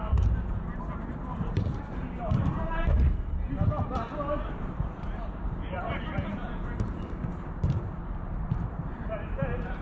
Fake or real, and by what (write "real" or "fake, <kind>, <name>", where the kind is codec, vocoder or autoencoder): fake, vocoder, BigVGAN v2